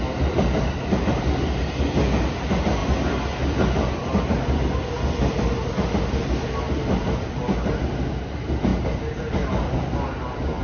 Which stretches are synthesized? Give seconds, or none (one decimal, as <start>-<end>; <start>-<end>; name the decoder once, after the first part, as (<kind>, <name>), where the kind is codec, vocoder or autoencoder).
none